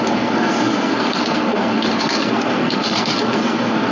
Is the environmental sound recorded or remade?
remade